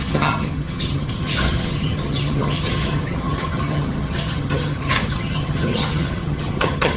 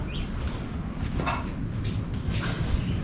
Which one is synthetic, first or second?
first